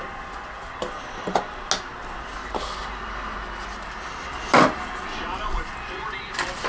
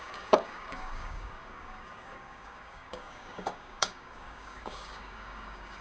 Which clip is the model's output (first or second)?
second